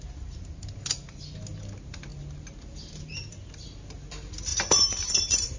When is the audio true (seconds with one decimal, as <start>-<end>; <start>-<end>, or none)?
0.0-4.5